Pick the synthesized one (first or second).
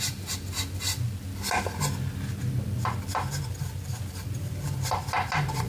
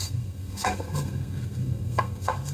second